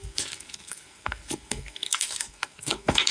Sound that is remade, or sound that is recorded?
remade